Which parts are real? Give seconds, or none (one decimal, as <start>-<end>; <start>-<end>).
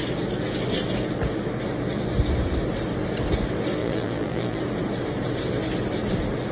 0.0-3.8; 4.6-6.5